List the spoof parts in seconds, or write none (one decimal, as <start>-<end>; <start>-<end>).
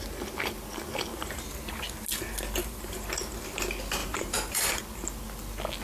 1.1-1.7; 2.6-3.3; 4.0-4.8